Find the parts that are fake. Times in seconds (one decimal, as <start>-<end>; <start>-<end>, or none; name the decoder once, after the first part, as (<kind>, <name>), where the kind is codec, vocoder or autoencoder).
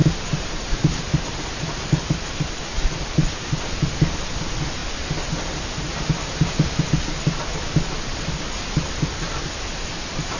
0.0-3.6 (vocoder, BigVGAN v2); 5.9-6.9